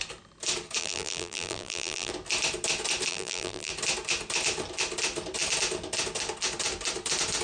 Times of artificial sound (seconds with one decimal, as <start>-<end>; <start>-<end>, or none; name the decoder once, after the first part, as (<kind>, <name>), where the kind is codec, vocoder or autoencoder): 0.8-2.1 (vocoder, BigVGAN v2); 3.1-3.7